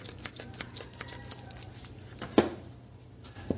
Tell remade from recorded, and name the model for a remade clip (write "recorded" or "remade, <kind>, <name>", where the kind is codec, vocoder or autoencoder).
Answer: recorded